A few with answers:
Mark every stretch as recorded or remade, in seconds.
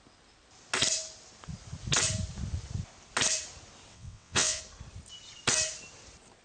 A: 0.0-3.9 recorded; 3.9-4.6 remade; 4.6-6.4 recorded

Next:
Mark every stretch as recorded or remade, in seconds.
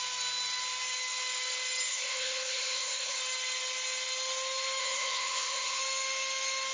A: 0.0-1.9 recorded; 1.9-3.2 remade; 3.2-4.8 recorded; 4.8-5.8 remade; 5.8-6.7 recorded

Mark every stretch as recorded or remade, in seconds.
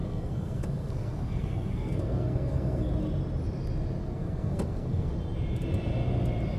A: 0.0-2.9 remade; 2.9-4.0 recorded; 4.0-5.1 remade; 5.1-6.6 recorded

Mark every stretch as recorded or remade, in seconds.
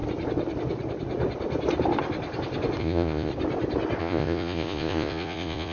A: 0.0-2.8 recorded; 2.8-3.3 remade; 3.3-4.0 recorded; 4.0-5.7 remade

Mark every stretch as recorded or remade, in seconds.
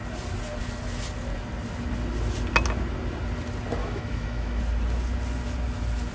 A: 0.0-3.8 recorded; 3.8-4.6 remade; 4.6-6.1 recorded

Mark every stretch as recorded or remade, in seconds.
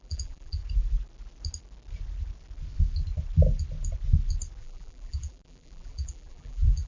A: 0.0-0.6 remade; 0.6-4.6 recorded; 4.6-6.9 remade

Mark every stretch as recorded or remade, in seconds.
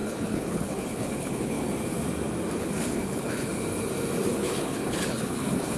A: 0.0-1.7 remade; 1.7-2.6 recorded; 2.6-3.5 remade; 3.5-4.3 recorded; 4.3-5.8 remade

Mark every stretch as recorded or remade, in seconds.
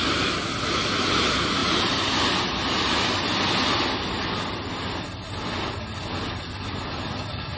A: 0.0-7.6 recorded